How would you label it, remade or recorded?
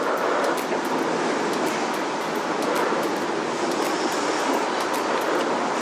recorded